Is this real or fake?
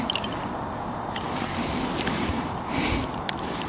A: real